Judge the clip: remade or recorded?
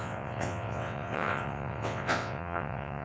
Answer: remade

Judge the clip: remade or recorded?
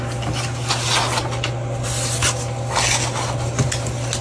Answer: recorded